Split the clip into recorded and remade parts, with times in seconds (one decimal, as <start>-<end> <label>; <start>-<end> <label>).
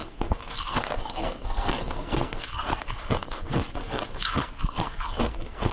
0.0-5.7 remade